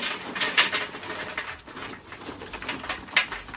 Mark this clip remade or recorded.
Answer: recorded